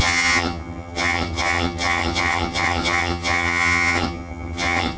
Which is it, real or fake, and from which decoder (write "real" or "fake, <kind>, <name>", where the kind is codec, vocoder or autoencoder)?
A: fake, vocoder, HiFi-GAN